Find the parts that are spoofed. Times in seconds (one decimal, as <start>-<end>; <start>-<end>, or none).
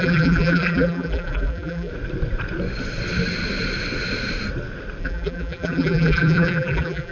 0.0-1.9; 5.0-7.1